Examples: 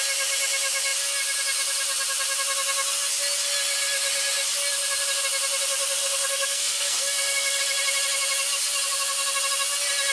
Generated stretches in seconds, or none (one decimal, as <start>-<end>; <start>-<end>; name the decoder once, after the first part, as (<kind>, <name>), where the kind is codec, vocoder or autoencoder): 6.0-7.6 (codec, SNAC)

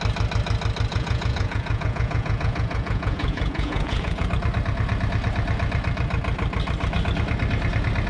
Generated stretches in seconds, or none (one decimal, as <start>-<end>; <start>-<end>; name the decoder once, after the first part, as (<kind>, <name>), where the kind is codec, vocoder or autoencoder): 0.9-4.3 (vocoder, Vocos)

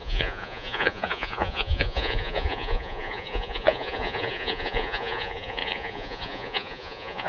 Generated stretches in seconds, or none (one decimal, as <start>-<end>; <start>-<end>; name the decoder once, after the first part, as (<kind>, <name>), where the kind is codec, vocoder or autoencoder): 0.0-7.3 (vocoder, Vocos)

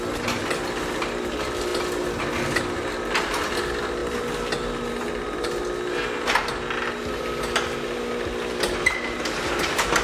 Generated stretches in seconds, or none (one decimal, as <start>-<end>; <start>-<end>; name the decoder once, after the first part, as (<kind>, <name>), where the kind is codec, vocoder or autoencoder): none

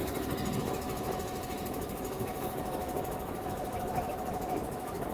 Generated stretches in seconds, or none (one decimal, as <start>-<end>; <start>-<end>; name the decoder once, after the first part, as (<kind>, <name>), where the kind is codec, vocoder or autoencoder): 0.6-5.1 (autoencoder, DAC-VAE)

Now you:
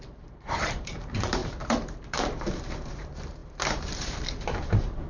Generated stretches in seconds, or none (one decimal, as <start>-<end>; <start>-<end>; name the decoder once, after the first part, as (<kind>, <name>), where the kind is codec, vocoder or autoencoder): 0.0-5.1 (vocoder, BigVGAN v2)

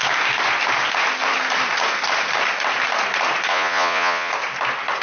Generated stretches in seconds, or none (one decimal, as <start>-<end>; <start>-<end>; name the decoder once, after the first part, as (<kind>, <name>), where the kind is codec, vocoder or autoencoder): 3.5-4.3 (vocoder, Vocos)